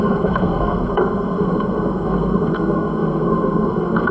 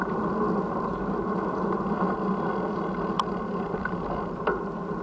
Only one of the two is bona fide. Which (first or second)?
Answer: second